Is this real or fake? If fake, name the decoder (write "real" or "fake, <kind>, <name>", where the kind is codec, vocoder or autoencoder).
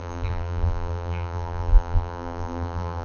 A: fake, vocoder, BigVGAN v2